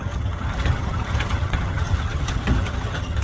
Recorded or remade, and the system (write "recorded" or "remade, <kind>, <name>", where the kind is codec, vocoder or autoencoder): remade, vocoder, HiFi-GAN